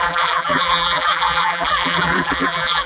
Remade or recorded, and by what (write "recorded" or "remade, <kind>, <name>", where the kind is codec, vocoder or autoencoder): remade, vocoder, BigVGAN v2